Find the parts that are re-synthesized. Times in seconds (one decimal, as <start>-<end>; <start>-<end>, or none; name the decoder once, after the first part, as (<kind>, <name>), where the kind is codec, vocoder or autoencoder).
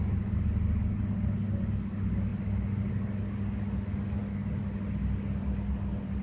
none